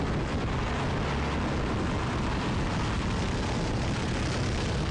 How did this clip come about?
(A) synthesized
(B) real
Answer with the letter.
B